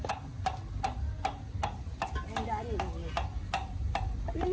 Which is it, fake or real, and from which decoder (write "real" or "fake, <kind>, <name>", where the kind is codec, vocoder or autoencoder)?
real